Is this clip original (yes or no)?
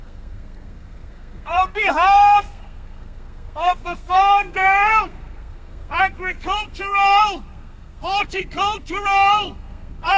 no